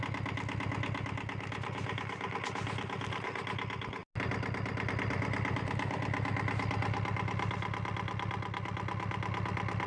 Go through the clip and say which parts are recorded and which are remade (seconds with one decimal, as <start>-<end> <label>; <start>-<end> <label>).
0.0-9.9 recorded